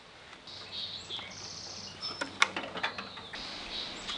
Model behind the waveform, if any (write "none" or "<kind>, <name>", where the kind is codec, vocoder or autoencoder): none